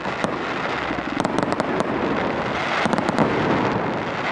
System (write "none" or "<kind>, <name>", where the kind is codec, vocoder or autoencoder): none